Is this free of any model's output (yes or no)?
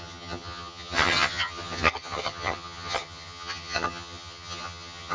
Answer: no